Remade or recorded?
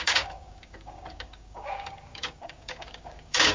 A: remade